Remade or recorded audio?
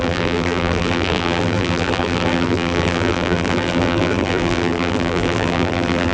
remade